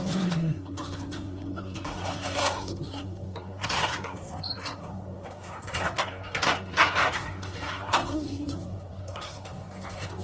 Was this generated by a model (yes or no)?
yes